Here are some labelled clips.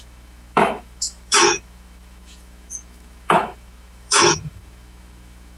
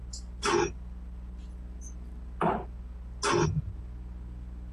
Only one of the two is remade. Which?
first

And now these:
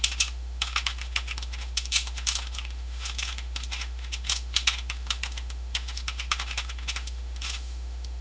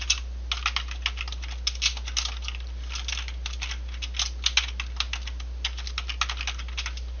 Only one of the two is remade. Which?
first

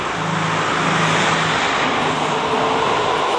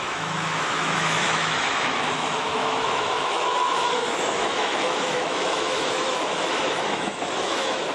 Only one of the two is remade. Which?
second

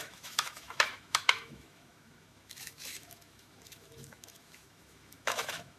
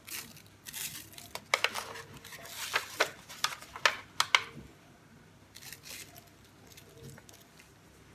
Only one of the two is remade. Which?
first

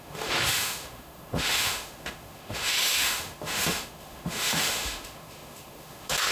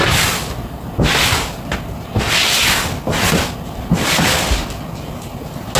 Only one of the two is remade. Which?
first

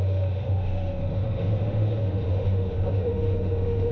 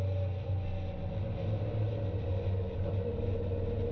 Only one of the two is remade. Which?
first